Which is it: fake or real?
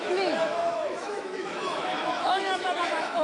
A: fake